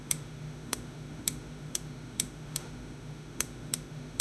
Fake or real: fake